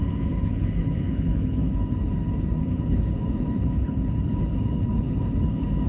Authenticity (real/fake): fake